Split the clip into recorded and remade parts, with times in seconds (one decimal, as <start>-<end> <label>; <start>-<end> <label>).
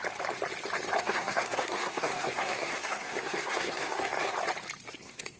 0.0-1.0 recorded; 1.0-4.4 remade; 4.4-4.9 recorded; 4.9-5.4 remade